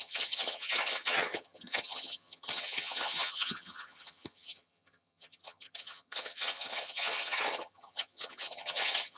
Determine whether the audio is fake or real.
fake